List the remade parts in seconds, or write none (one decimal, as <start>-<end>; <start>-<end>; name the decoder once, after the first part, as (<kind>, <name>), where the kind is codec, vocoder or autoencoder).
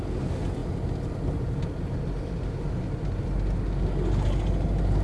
none